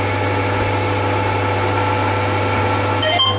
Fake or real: real